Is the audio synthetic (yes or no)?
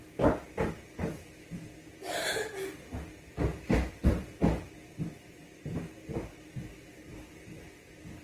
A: no